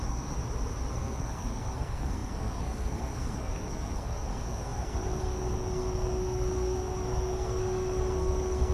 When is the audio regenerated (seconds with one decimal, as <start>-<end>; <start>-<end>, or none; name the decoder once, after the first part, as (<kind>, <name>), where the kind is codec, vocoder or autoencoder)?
0.0-0.4 (codec, SNAC); 0.9-8.7